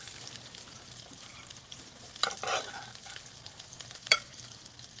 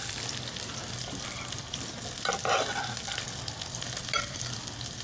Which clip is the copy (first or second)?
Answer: first